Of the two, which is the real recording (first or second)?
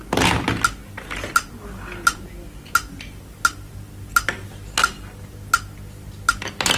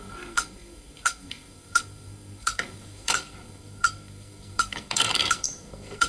first